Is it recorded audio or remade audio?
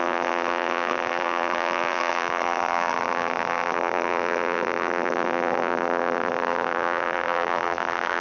remade